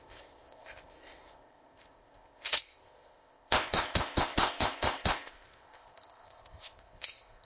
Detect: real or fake fake